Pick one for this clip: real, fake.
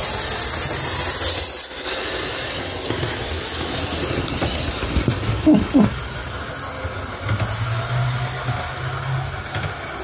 real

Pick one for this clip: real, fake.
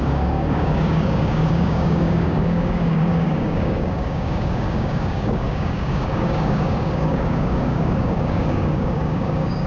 fake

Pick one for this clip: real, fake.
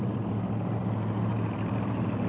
real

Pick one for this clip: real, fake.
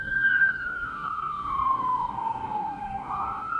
fake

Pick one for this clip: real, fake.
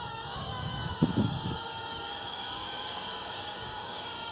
fake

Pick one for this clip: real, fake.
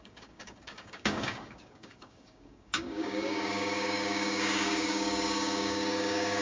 fake